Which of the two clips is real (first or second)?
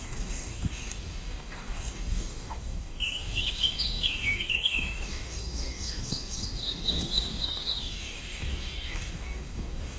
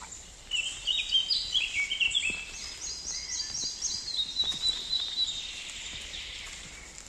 second